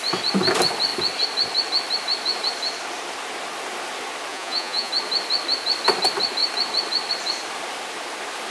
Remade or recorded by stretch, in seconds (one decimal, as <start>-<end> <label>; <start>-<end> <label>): 0.0-4.3 recorded; 4.3-4.9 remade; 4.9-8.5 recorded